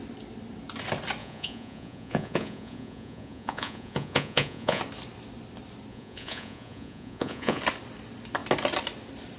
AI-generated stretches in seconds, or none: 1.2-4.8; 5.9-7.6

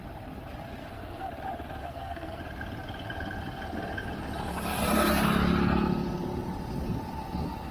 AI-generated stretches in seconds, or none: 0.8-1.3; 1.8-2.4

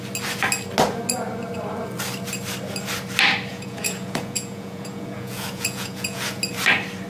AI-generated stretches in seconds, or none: 3.5-6.4